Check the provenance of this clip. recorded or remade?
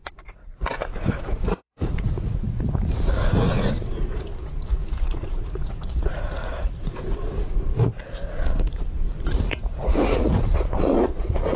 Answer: remade